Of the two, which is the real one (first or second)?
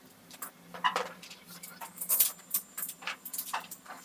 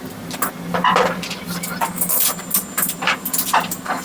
second